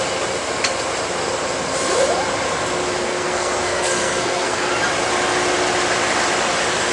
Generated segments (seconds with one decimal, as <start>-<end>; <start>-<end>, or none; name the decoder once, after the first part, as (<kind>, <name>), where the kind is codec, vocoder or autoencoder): 3.0-4.7 (codec, SNAC)